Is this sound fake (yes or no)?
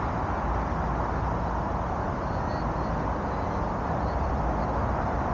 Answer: no